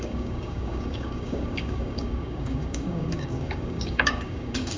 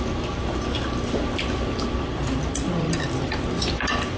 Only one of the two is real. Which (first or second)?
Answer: second